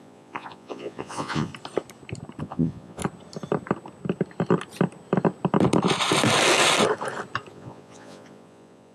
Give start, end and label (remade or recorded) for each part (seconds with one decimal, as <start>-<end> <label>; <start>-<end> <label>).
0.0-1.5 remade; 1.5-2.4 recorded; 2.4-3.0 remade; 3.0-7.5 recorded; 7.5-8.9 remade